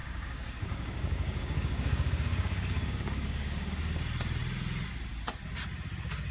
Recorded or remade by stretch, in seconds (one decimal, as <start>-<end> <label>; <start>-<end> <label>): 0.0-3.8 remade; 3.8-6.3 recorded